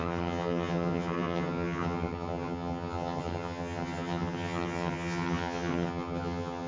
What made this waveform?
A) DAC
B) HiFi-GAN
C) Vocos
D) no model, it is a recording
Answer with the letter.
B